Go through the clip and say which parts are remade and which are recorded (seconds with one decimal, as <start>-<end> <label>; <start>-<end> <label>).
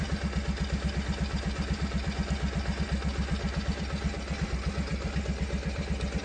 0.0-6.2 recorded